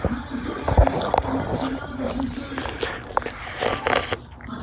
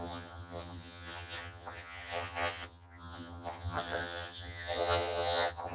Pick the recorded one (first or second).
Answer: first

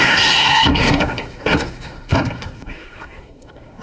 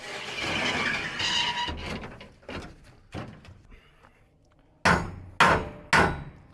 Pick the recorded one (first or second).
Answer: second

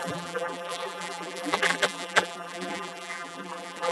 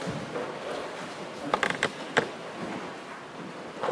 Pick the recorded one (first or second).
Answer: second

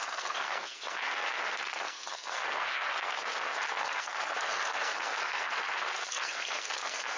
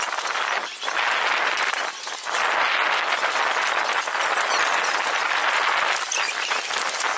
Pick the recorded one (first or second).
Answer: second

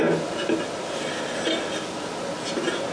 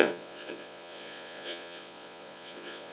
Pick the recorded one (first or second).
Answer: first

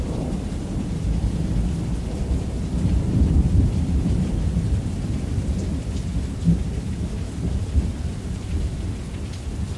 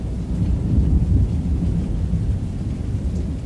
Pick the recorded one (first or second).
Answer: second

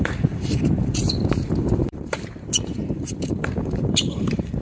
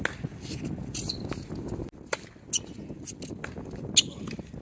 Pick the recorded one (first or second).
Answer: second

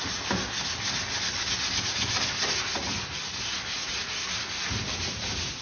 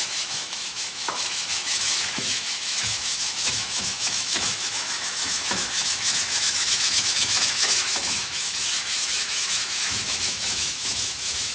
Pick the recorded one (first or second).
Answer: first